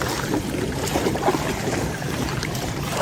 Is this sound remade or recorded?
remade